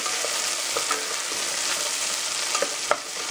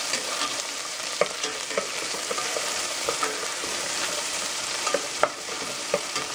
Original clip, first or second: first